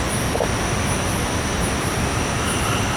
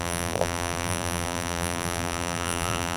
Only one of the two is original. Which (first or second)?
first